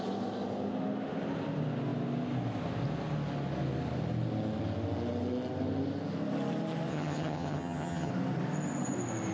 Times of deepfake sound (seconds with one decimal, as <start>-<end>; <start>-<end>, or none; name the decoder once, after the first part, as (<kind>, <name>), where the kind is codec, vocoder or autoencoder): 6.9-8.1 (vocoder, HiFi-GAN)